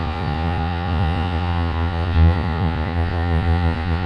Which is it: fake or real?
fake